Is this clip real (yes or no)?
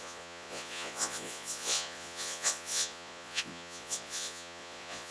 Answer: no